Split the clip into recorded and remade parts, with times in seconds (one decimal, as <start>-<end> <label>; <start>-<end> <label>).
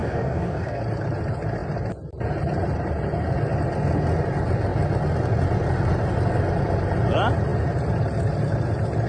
0.0-0.8 remade; 0.8-9.1 recorded